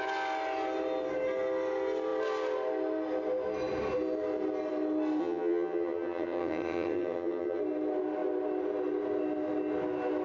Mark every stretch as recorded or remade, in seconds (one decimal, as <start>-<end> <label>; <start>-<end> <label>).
0.0-5.2 recorded; 5.2-7.6 remade; 7.6-10.2 recorded